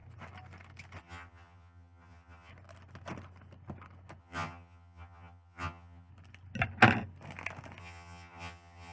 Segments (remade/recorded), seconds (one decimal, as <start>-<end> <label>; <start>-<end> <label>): 0.0-1.0 recorded; 1.0-2.5 remade; 2.5-4.2 recorded; 4.2-6.1 remade; 6.1-7.8 recorded; 7.8-8.9 remade